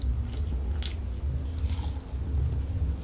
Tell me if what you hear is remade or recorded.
recorded